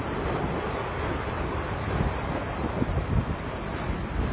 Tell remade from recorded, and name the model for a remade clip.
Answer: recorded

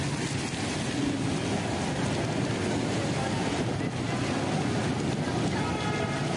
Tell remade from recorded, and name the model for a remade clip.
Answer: recorded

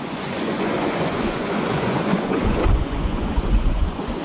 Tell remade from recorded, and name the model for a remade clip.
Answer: remade, vocoder, Vocos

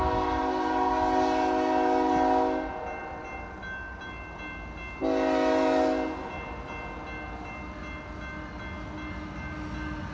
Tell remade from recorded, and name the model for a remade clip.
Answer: recorded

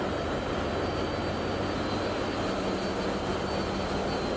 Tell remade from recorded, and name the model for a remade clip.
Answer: recorded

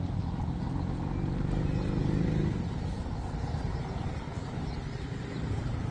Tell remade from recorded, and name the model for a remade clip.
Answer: recorded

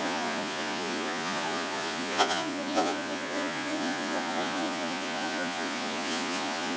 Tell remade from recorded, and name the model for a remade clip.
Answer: remade, vocoder, Vocos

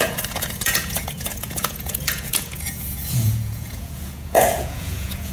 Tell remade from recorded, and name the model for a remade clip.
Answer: remade, vocoder, Vocos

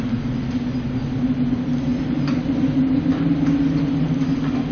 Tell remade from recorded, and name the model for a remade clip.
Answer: recorded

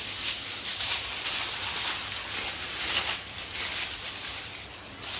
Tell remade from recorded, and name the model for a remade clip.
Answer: recorded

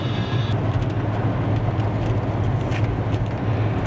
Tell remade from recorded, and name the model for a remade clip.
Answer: recorded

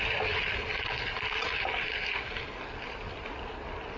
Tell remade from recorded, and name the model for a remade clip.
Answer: recorded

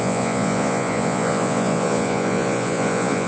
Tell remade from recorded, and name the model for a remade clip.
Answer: remade, vocoder, Vocos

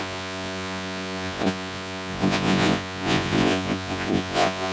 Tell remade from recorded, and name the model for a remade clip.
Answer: remade, vocoder, Vocos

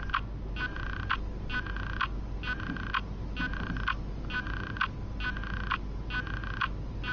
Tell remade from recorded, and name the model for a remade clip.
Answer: recorded